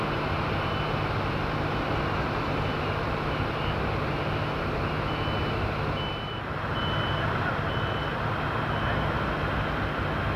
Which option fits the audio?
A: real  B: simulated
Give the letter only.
A